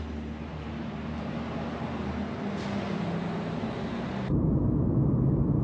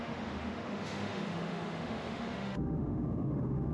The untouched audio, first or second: first